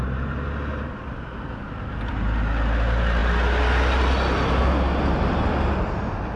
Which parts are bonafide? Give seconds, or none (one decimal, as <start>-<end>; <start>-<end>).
0.0-6.4